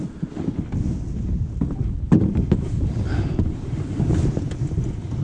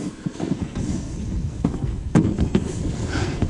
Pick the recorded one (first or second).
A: first